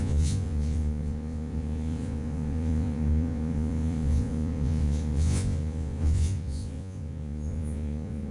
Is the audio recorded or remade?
remade